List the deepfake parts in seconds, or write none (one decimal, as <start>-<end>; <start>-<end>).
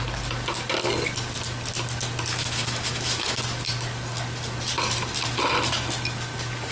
2.3-3.4